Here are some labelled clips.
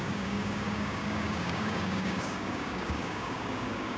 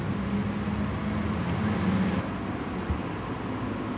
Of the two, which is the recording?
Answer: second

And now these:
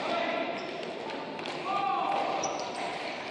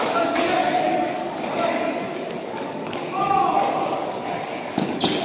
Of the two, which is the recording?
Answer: first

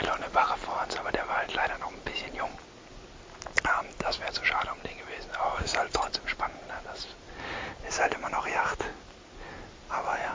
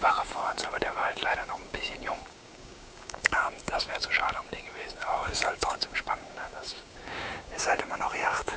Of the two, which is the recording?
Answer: first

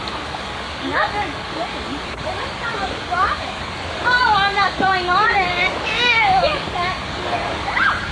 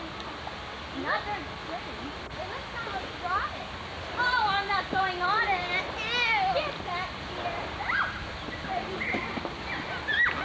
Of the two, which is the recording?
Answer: second